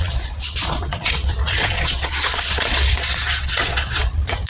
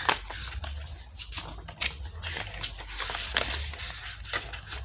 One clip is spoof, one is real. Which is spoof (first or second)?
first